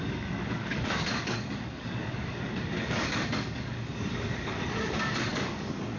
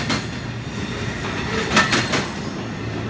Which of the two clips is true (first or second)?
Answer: second